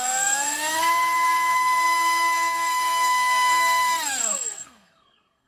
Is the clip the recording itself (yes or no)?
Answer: no